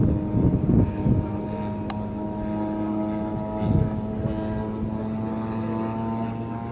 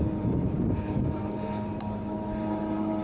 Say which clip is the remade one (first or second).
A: second